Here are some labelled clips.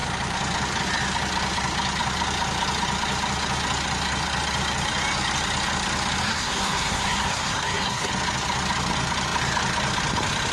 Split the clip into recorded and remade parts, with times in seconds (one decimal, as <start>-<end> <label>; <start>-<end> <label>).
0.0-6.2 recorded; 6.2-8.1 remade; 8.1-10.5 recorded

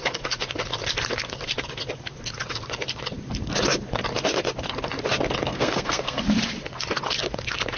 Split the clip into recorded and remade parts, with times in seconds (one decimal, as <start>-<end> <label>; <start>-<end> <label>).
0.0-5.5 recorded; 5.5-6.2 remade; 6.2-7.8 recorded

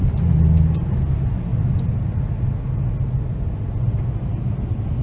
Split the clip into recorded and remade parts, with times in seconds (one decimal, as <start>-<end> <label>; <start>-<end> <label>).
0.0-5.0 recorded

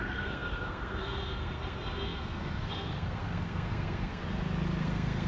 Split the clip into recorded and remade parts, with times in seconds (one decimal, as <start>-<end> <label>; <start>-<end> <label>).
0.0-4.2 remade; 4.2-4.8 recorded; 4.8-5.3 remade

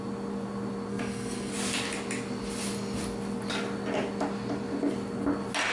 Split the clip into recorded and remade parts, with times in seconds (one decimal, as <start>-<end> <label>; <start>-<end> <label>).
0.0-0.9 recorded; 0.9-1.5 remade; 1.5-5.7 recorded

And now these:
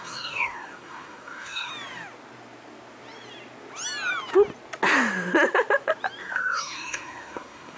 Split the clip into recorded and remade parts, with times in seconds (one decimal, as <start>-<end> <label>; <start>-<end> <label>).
0.0-1.7 remade; 1.7-6.2 recorded; 6.2-7.8 remade